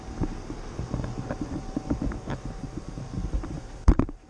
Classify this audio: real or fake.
fake